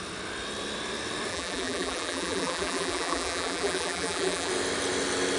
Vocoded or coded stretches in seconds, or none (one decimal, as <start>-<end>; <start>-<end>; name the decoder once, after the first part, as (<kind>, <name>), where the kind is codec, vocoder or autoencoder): 1.3-4.5 (vocoder, BigVGAN v2)